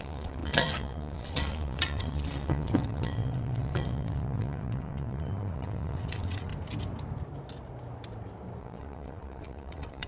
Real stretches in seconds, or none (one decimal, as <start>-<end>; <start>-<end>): 6.5-8.6